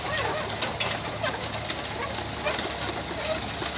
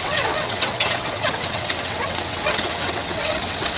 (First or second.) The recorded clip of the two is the first